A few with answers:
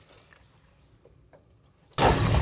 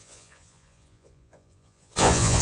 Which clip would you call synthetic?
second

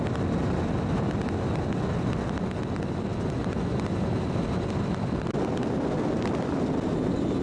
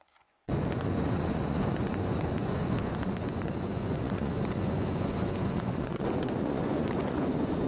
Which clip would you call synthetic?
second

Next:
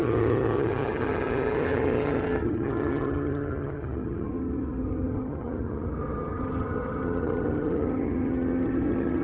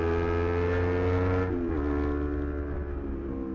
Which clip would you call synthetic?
first